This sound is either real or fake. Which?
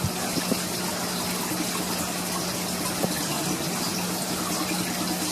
real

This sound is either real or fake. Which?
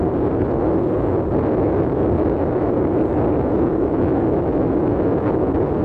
real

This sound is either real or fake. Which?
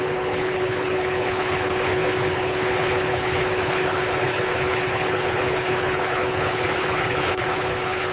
fake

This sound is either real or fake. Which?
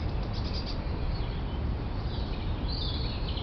real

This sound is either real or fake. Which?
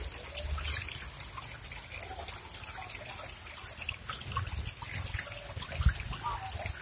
real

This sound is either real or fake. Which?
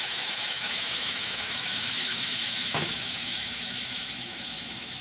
fake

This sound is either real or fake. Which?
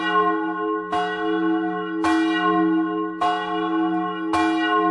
real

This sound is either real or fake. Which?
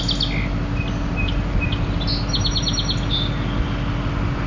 real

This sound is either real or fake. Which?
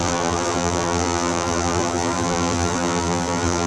fake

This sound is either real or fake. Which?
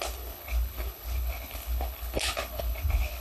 fake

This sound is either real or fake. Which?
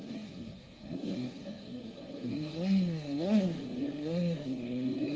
fake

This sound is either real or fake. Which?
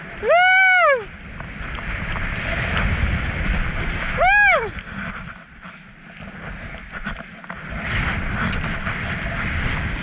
real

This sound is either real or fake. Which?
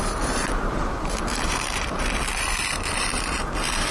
fake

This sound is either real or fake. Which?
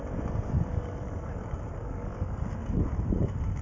real